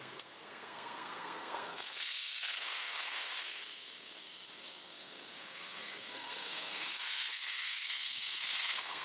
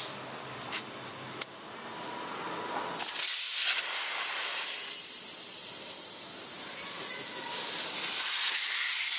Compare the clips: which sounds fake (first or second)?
first